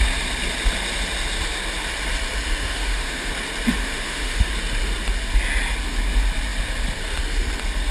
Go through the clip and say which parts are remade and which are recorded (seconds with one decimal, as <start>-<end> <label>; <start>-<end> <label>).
0.0-2.6 recorded; 2.6-3.3 remade; 3.3-3.8 recorded; 3.8-4.5 remade; 4.5-7.9 recorded